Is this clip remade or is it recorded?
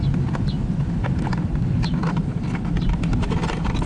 recorded